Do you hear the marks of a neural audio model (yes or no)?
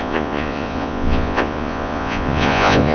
yes